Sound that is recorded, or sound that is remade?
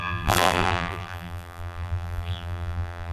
remade